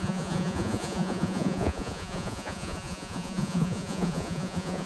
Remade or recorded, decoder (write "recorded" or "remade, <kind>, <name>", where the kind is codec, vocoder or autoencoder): remade, vocoder, Vocos